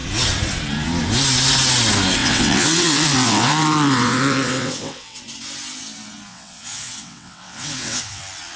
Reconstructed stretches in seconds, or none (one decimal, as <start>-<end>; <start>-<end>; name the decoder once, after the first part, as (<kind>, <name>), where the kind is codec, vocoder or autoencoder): 2.2-5.2 (vocoder, WaveNeXt); 6.3-8.2